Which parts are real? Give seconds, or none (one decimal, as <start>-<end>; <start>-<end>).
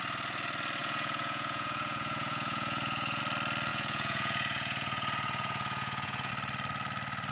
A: 0.0-0.8; 3.2-3.7; 6.3-7.3